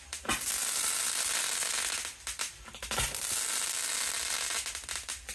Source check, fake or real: real